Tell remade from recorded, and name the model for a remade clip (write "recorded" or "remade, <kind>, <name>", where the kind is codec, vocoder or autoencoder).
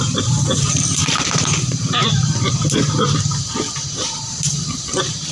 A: remade, vocoder, BigVGAN v2